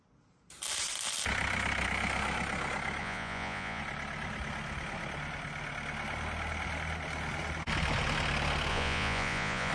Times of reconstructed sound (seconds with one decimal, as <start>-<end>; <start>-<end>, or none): 3.0-3.8; 8.7-9.7